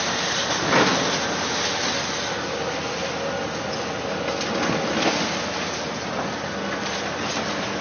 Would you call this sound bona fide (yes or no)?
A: yes